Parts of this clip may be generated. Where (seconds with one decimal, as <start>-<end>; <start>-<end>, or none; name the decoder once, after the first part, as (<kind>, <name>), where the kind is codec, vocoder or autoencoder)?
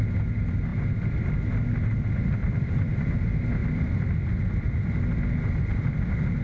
2.4-3.1 (vocoder, BigVGAN v2); 3.6-4.4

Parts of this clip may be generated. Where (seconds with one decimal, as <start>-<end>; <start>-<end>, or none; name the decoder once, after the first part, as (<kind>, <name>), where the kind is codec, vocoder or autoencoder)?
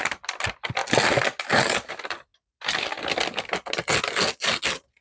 none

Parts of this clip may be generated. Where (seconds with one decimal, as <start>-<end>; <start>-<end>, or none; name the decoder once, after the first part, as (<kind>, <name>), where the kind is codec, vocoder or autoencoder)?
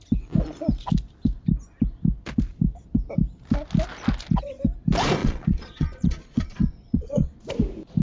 5.2-7.4 (vocoder, Vocos)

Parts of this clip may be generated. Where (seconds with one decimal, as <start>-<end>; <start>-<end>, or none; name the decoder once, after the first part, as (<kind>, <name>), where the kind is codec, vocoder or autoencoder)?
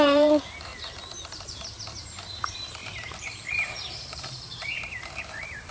0.0-0.7 (vocoder, BigVGAN v2); 2.0-5.7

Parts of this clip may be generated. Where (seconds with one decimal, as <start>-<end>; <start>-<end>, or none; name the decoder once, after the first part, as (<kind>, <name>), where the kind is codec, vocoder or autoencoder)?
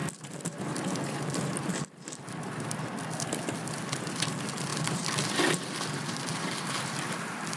none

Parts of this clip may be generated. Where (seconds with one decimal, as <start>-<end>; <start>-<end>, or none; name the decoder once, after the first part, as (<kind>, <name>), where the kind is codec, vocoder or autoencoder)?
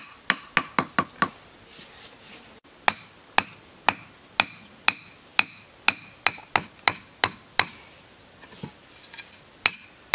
none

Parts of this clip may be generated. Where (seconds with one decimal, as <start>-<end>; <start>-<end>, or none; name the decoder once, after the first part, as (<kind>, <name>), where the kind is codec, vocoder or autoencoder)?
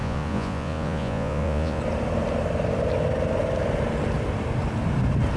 0.0-1.8 (vocoder, Vocos)